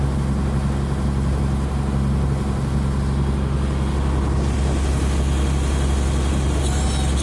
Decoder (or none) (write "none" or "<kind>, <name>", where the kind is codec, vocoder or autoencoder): none